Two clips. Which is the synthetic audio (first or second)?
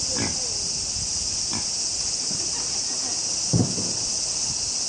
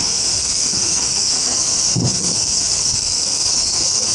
second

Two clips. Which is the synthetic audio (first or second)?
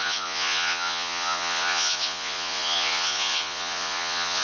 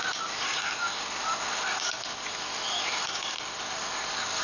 first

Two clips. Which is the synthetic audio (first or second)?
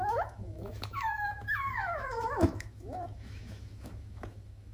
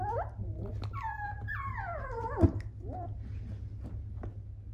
first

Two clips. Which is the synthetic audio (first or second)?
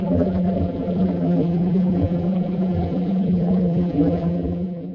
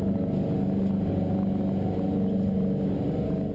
first